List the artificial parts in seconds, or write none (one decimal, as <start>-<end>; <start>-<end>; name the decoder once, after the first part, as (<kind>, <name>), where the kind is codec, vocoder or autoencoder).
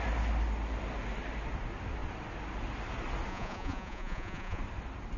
3.3-4.6 (vocoder, Vocos)